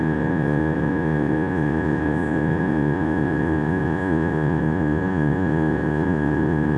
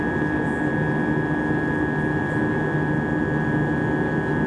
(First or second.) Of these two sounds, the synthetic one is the first